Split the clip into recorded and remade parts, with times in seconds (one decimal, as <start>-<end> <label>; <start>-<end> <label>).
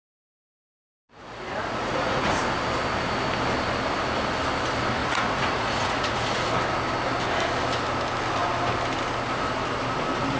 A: 0.0-0.4 recorded; 0.4-2.4 remade; 2.4-5.0 recorded; 5.0-6.5 remade; 6.5-10.4 recorded